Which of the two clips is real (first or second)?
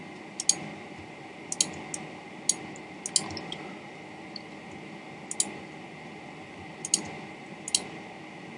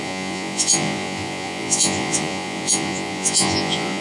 first